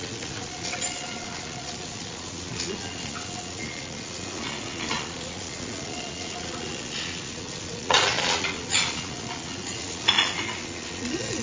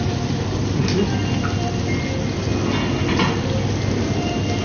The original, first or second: second